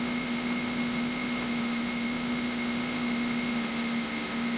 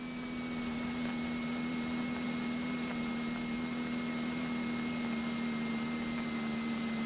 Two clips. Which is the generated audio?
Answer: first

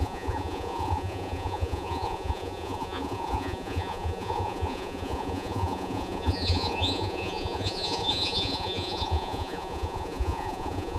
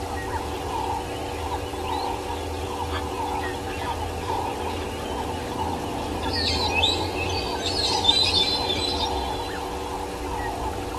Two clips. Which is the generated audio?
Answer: first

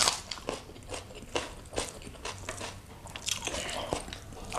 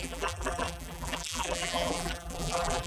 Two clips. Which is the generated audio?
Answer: second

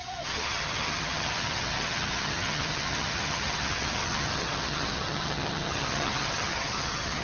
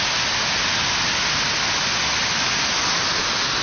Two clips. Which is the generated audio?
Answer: first